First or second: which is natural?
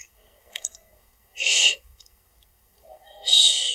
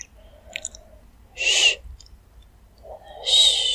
second